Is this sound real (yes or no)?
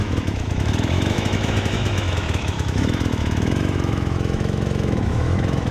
no